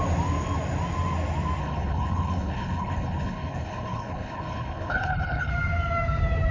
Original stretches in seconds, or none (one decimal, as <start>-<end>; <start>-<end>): 0.0-1.6; 5.5-6.5